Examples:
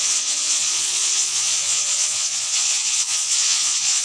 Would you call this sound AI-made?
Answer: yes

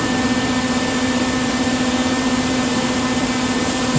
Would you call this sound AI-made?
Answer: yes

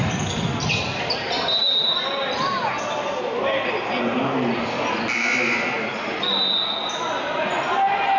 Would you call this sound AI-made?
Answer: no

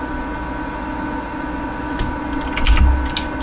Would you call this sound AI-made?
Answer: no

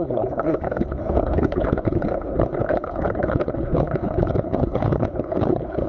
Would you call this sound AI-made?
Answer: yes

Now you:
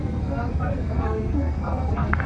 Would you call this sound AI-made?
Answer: yes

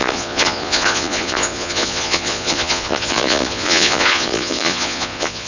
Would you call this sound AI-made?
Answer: yes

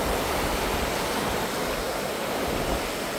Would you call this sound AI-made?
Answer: no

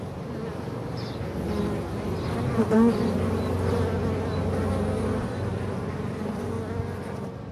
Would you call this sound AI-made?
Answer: no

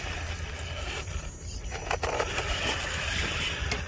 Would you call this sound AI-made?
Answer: no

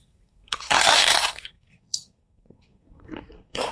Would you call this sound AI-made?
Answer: yes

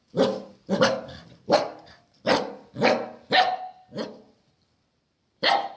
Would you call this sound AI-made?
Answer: yes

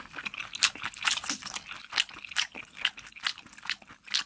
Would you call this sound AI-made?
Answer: no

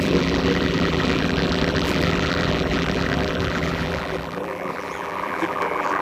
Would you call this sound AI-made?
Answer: yes